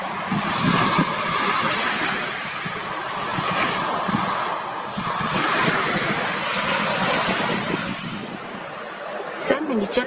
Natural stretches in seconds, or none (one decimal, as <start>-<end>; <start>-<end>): 0.0-10.1